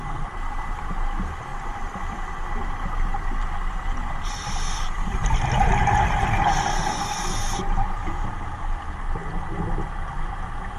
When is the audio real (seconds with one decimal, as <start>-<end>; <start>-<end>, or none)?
0.0-4.4; 5.1-10.8